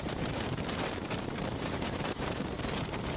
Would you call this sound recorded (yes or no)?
no